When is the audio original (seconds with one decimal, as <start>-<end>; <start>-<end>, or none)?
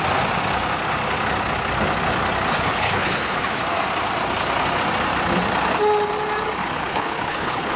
0.0-2.5; 3.6-6.6